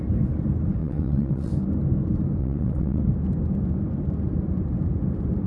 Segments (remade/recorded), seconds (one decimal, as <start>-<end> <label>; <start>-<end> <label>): 0.0-0.8 recorded; 0.8-1.5 remade; 1.5-2.4 recorded; 2.4-3.0 remade; 3.0-5.5 recorded